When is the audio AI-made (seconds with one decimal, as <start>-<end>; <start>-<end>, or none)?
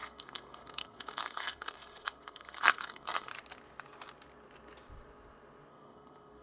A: 0.0-3.3; 5.7-6.4